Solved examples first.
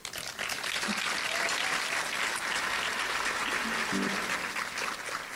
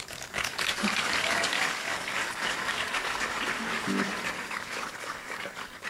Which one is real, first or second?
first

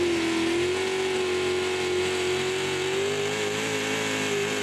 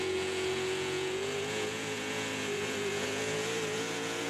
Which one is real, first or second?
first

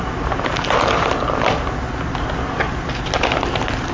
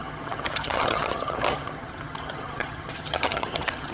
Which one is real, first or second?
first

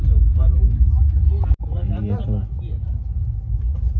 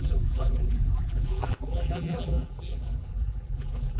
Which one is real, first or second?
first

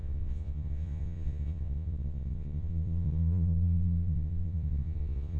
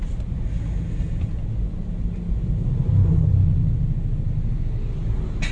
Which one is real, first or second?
second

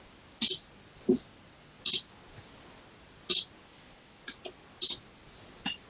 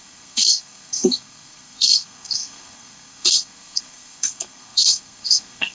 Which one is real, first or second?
first